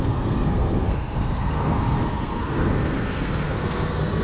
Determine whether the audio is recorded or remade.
remade